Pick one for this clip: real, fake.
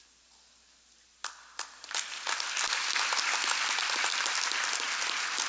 real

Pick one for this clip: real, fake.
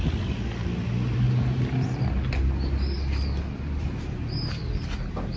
real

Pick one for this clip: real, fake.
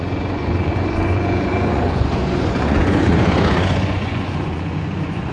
fake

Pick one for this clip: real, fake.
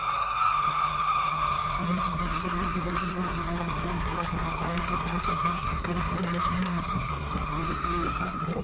fake